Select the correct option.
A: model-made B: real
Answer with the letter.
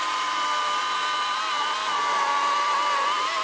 B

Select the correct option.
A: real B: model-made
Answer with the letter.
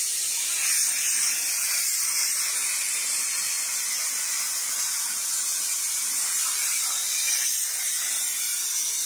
A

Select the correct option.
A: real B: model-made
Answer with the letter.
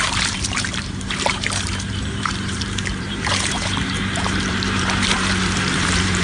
B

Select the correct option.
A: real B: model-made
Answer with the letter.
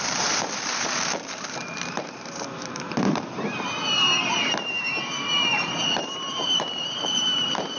B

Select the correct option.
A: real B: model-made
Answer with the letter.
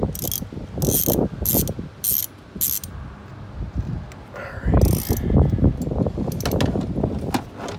A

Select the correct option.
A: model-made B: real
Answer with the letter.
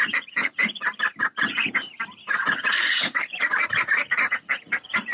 A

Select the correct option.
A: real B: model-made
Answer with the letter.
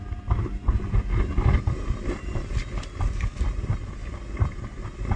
B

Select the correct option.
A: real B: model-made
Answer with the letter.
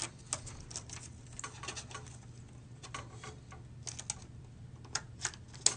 A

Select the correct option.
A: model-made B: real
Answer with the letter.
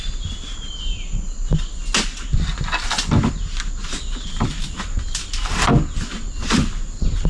B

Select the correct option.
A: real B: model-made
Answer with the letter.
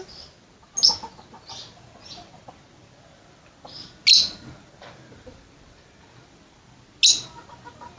A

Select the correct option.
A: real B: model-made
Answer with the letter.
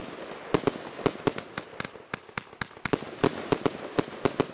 A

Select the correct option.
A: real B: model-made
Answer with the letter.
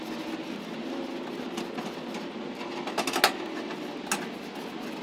A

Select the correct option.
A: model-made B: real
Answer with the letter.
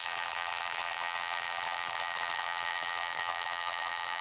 A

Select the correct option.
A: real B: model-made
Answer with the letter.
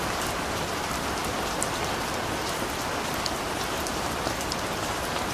B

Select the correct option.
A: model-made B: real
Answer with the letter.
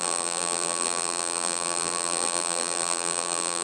A